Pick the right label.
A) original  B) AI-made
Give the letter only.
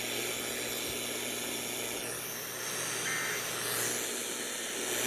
A